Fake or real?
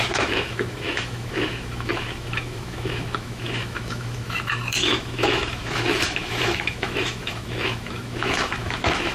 fake